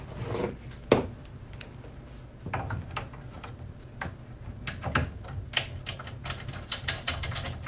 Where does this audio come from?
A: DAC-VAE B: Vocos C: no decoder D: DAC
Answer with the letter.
C